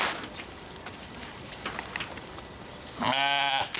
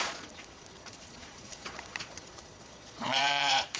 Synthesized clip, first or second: second